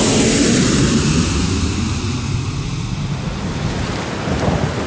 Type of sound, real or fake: real